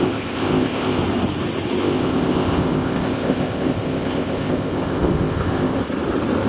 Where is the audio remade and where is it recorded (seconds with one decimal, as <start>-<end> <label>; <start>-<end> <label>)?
0.0-1.0 remade; 1.0-1.8 recorded; 1.8-5.7 remade; 5.7-6.5 recorded